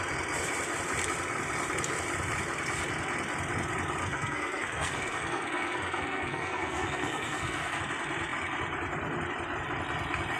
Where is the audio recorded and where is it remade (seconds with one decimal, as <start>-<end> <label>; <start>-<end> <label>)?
0.0-4.0 recorded; 4.0-7.8 remade; 7.8-10.4 recorded